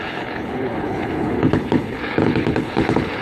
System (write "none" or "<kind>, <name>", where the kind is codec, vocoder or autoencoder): codec, HILCodec